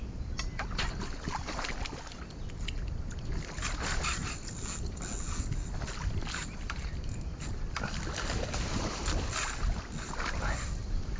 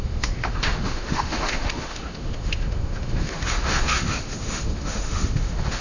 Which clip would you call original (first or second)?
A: first